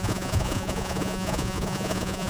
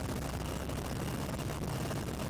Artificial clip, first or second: first